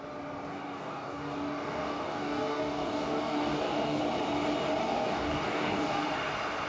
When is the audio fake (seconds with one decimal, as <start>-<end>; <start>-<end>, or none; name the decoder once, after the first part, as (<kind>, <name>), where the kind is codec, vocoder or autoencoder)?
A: 0.5-4.0 (codec, DAC); 4.8-6.1